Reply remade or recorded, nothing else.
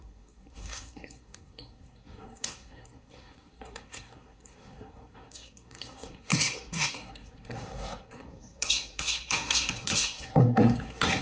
remade